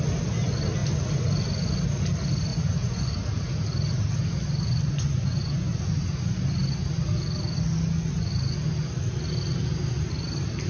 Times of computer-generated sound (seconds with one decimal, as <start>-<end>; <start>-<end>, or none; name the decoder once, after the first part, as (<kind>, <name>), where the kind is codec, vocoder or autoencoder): 2.5-3.1 (vocoder, Vocos); 4.9-5.7